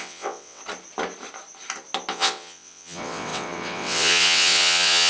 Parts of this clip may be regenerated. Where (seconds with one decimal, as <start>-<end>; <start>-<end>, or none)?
0.0-0.6; 2.1-5.1